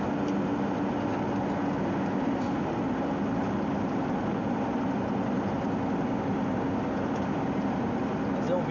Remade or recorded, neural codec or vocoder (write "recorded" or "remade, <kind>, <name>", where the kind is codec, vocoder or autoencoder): recorded